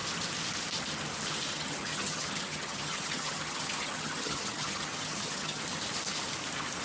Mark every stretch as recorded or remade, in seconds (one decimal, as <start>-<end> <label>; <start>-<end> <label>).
0.0-1.5 recorded; 1.5-5.6 remade; 5.6-6.8 recorded